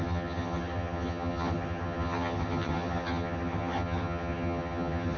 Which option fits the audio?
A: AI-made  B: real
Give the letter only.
A